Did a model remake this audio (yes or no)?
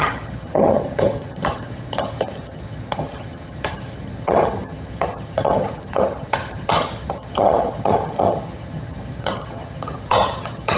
yes